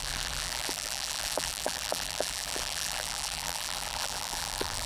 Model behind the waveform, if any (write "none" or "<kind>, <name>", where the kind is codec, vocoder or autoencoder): vocoder, BigVGAN v2